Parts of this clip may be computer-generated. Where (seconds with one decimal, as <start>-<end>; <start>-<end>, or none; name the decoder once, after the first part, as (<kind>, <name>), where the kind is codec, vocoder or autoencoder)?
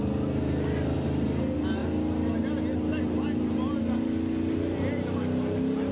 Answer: none